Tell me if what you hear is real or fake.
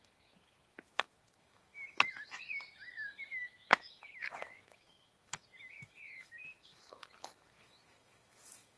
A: fake